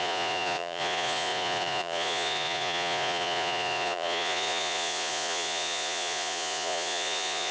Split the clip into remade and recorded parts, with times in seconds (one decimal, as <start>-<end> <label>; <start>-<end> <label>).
0.0-7.5 remade